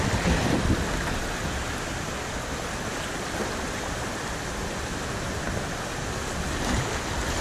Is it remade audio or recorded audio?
recorded